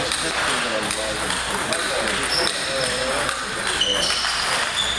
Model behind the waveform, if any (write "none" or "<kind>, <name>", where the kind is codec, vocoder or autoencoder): none